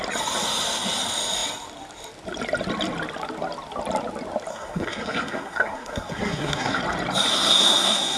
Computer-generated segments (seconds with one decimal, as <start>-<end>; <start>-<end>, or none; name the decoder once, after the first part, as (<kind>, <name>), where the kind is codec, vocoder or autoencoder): 4.5-6.8 (codec, SNAC); 7.3-8.2

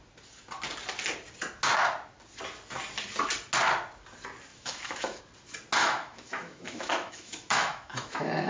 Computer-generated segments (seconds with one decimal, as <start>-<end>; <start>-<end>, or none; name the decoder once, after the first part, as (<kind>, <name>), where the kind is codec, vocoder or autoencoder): 4.5-5.2 (autoencoder, DAC-VAE); 5.8-8.5

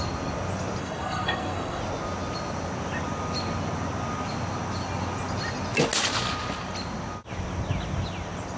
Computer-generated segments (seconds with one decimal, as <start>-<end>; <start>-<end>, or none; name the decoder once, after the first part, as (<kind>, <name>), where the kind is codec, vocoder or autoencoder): 0.8-1.8 (codec, SNAC)